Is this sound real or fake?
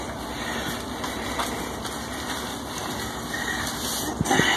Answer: real